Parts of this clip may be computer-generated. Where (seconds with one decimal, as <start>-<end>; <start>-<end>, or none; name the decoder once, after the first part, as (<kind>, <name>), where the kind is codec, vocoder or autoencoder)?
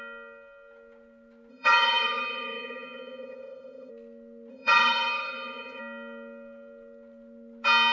1.5-3.9 (vocoder, HiFi-GAN); 4.5-5.8